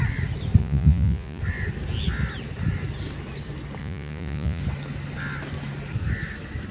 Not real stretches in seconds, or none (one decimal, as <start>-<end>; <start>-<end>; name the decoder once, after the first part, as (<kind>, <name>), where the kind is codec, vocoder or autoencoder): 0.6-1.4 (vocoder, Vocos); 3.8-4.6